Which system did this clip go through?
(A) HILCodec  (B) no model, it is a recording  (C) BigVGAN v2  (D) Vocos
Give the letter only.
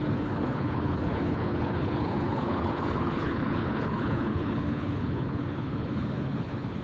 A